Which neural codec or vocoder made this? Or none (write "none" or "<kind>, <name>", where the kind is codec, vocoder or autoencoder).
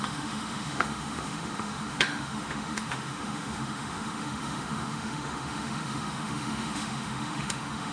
autoencoder, DAC-VAE